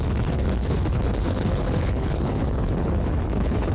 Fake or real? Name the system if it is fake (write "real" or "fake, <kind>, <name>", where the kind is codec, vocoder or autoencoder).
fake, codec, HILCodec